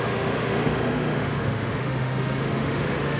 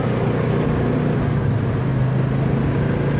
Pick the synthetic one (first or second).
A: first